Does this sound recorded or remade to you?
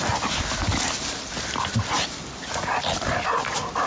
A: recorded